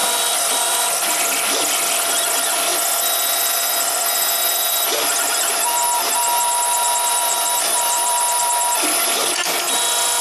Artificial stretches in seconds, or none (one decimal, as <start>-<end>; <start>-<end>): 0.0-1.2; 7.1-8.5